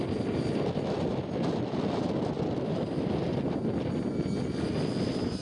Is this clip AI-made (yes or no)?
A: no